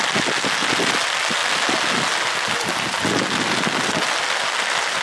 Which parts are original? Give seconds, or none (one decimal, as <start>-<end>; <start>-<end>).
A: 0.0-5.0